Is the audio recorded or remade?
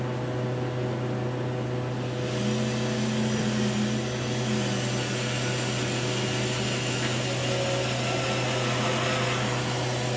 recorded